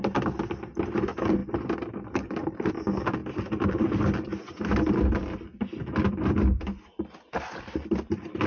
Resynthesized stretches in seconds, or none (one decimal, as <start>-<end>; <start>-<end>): none